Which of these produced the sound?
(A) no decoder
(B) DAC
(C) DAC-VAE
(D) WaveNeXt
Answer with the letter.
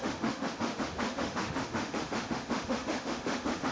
C